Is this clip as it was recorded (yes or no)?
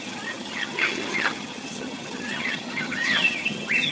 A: no